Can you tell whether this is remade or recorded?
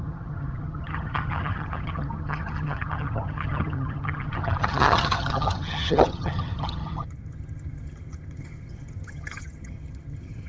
remade